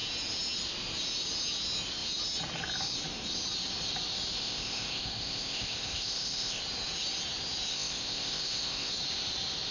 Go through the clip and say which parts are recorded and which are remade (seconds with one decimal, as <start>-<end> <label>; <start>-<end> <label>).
0.0-4.4 recorded; 4.4-6.6 remade; 6.6-7.7 recorded; 7.7-8.9 remade; 8.9-9.7 recorded